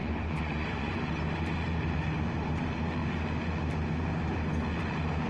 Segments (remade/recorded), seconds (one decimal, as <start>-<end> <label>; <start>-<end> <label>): 0.0-1.2 remade; 1.2-5.3 recorded